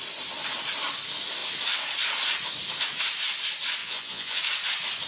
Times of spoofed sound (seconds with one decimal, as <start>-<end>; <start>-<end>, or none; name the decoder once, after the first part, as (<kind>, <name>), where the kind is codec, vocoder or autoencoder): 3.8-4.4 (vocoder, Vocos)